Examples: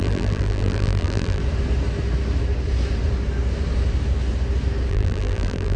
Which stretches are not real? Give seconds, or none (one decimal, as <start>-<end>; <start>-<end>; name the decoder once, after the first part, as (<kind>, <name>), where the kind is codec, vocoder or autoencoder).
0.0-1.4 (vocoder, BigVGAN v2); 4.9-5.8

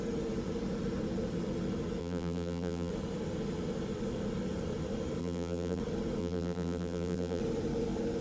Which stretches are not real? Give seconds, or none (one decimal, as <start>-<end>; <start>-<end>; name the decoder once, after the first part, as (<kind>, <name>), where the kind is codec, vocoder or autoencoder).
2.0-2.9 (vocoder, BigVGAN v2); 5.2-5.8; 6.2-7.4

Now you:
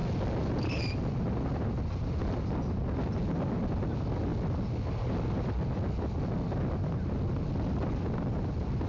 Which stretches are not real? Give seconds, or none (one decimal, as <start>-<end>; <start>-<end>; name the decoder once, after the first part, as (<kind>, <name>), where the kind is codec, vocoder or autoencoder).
none

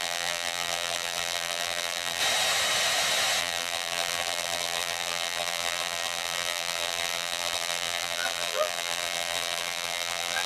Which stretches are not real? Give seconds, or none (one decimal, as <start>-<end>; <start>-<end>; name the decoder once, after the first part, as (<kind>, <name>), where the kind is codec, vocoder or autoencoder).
0.0-2.2 (vocoder, BigVGAN v2); 3.4-10.5

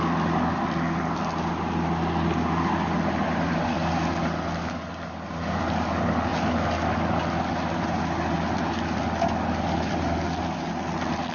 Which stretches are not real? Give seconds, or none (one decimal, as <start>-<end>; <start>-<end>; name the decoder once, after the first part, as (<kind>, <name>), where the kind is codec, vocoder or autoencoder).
none